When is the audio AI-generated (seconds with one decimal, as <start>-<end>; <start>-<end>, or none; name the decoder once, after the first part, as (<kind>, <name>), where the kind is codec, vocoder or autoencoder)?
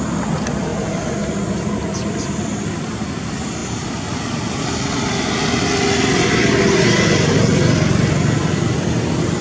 none